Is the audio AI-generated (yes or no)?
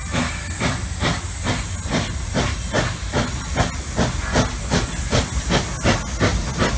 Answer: no